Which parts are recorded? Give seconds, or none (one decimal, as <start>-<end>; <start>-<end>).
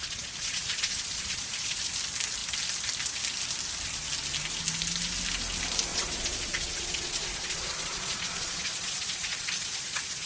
1.8-5.9